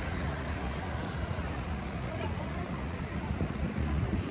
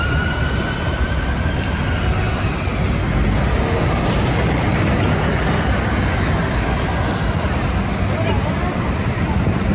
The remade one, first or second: first